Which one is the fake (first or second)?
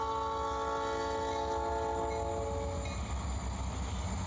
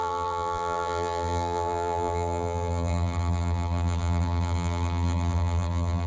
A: second